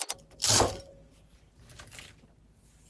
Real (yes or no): yes